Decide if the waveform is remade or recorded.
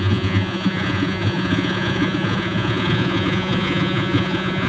remade